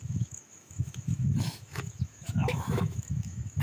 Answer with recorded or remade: remade